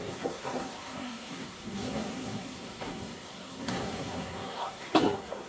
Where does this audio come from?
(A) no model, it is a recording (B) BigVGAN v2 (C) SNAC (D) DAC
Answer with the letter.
C